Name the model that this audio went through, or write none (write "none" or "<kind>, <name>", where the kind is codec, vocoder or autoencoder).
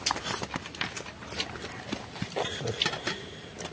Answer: none